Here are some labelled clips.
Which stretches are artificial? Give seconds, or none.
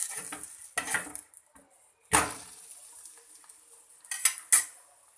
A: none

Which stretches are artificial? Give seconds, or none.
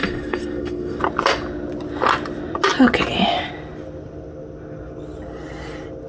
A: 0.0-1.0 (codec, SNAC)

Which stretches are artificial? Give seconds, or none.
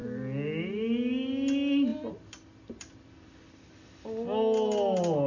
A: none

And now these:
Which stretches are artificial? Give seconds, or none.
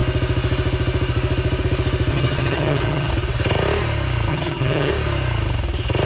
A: 2.1-3.1 (vocoder, HiFi-GAN); 4.3-4.9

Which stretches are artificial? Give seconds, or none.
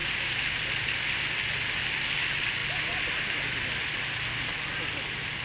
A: none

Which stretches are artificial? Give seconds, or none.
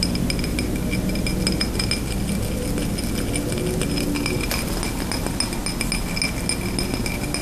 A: none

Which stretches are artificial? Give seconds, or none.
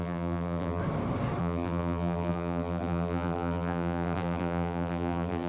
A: 0.0-0.8 (vocoder, BigVGAN v2); 1.4-5.5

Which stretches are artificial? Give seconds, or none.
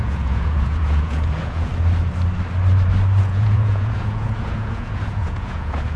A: 0.0-1.7 (vocoder, Vocos); 3.2-6.0